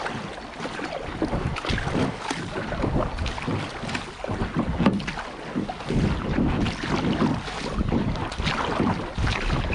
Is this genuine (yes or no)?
yes